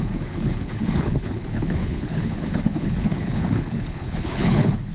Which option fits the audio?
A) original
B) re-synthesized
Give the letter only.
B